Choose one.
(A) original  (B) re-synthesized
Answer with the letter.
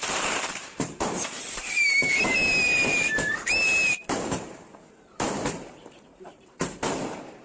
B